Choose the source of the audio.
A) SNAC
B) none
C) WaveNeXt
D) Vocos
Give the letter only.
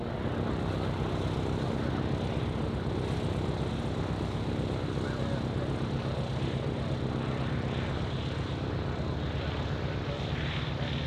B